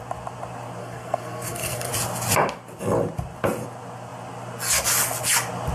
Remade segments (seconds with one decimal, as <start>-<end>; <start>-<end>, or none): 0.8-1.9